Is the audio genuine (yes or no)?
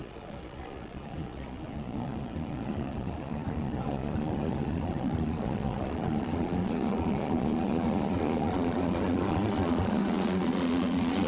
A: no